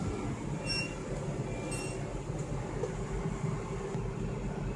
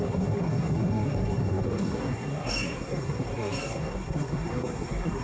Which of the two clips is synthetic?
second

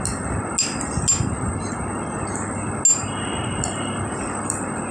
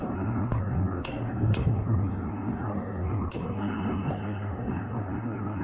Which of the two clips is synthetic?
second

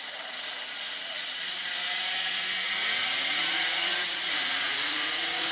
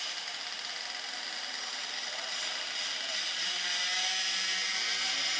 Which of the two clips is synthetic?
first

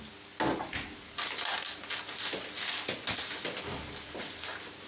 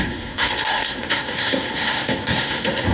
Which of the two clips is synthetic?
second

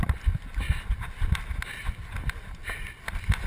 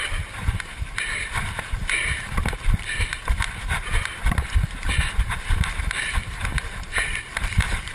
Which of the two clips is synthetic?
second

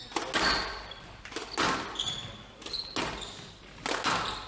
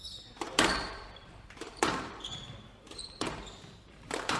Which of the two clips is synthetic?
second